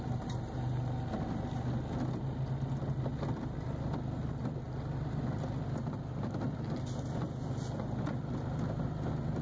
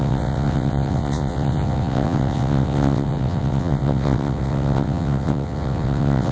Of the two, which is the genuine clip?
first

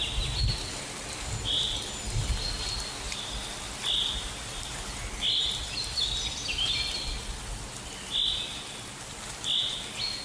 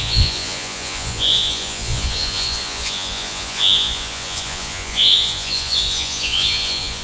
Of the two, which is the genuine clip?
first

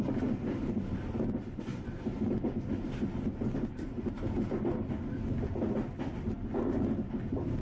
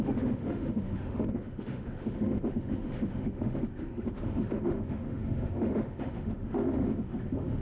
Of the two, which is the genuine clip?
first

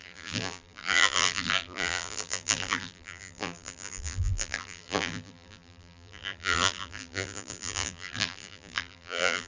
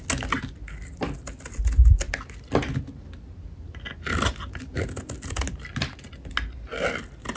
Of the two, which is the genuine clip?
second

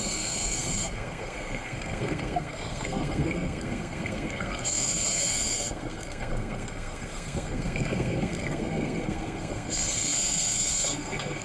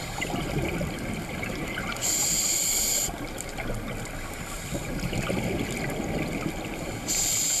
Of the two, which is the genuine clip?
second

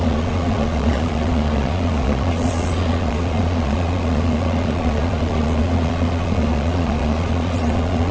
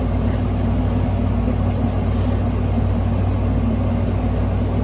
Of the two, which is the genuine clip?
second